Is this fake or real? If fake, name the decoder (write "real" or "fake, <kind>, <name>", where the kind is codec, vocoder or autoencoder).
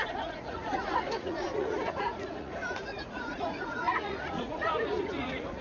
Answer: fake, vocoder, Vocos